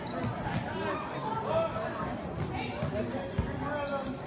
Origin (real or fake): real